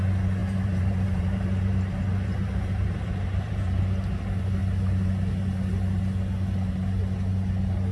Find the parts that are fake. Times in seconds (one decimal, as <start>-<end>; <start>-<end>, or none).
0.4-3.8